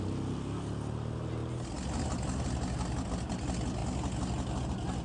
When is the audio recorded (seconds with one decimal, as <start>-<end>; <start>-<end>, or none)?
0.0-5.0